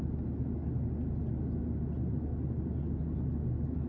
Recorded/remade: recorded